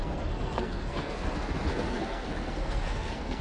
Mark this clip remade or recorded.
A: remade